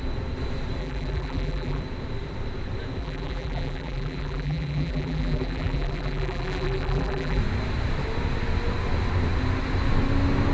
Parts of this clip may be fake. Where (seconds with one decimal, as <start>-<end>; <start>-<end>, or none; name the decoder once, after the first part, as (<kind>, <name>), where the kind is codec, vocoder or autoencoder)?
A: 0.8-1.8 (vocoder, BigVGAN v2); 3.0-7.4